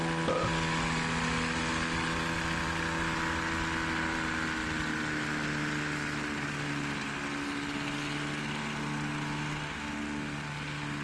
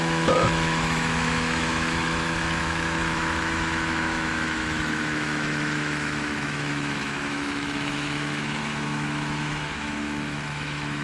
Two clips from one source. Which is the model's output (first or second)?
second